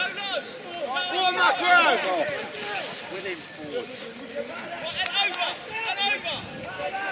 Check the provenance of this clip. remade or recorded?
recorded